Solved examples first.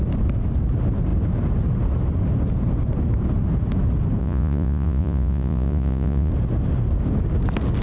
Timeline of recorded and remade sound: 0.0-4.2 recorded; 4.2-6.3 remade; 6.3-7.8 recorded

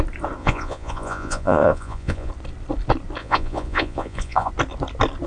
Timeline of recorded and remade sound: 0.0-0.4 recorded; 0.4-2.3 remade; 2.3-3.2 recorded; 3.2-4.5 remade; 4.5-5.3 recorded

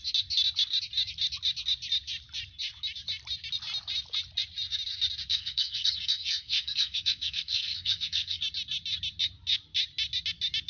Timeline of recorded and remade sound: 0.0-5.3 recorded; 5.3-8.4 remade; 8.4-10.7 recorded

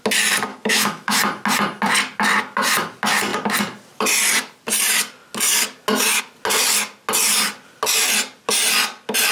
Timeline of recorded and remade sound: 0.0-0.5 recorded; 0.5-1.2 remade; 1.2-9.3 recorded